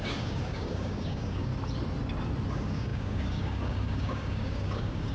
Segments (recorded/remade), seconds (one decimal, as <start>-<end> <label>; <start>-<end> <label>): 0.0-1.5 remade; 1.5-2.5 recorded; 2.5-5.1 remade